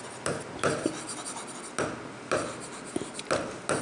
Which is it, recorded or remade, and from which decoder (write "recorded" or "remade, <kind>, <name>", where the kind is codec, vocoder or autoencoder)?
recorded